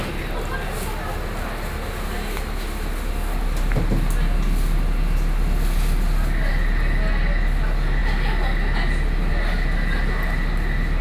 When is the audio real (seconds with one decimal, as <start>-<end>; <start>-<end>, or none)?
0.0-11.0

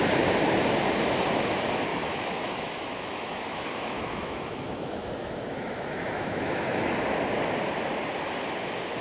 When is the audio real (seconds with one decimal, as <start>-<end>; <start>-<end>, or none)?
0.0-1.9; 6.9-9.0

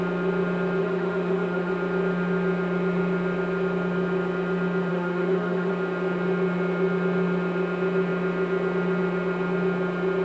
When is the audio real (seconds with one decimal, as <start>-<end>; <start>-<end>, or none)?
0.0-0.8; 1.7-4.9; 5.7-10.2